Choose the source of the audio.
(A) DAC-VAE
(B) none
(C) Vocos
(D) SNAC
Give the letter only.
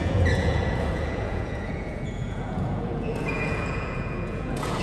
C